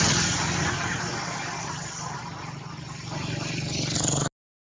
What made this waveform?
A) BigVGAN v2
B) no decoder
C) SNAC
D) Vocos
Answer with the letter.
B